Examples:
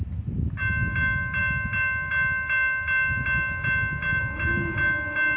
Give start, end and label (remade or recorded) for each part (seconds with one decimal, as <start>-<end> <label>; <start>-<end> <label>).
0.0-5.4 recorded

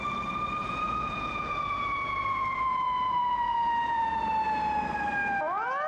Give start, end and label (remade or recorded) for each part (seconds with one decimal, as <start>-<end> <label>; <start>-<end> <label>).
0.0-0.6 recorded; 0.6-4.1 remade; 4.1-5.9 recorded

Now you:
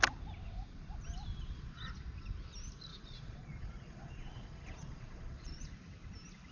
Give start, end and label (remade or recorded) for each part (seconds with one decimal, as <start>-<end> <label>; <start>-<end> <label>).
0.0-1.3 recorded; 1.3-1.9 remade; 1.9-2.9 recorded; 2.9-5.7 remade; 5.7-6.5 recorded

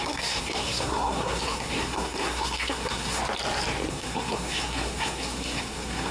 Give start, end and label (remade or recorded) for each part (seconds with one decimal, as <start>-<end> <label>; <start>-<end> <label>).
0.0-3.2 remade; 3.2-3.9 recorded; 3.9-6.1 remade

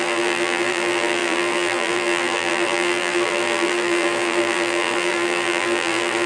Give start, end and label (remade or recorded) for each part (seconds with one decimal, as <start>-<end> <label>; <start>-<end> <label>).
0.0-6.3 remade

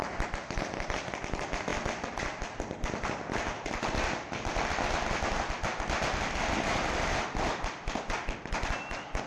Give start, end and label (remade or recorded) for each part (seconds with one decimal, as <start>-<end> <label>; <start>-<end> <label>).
0.0-9.3 recorded